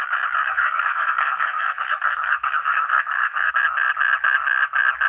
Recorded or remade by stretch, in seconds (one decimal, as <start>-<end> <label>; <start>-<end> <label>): 0.0-0.4 recorded; 0.4-3.5 remade; 3.5-5.1 recorded